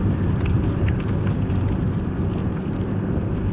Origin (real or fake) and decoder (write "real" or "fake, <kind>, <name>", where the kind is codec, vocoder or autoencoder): real